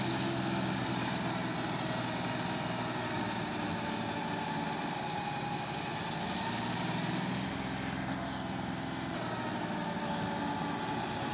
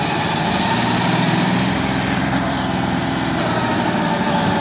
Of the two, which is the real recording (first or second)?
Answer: first